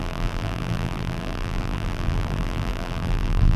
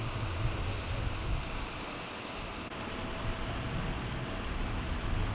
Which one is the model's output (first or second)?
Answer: first